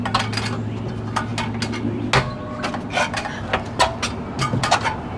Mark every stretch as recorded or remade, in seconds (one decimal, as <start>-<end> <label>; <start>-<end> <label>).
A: 0.0-5.2 recorded